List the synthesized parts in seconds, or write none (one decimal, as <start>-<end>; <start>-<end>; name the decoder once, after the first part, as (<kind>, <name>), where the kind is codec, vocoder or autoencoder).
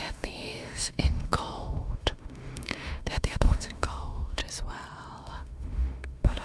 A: 0.0-4.4 (autoencoder, DAC-VAE); 5.2-6.4